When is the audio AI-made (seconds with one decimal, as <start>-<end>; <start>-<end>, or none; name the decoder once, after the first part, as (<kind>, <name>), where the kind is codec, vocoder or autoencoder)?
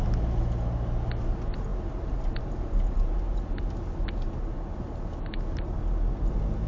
none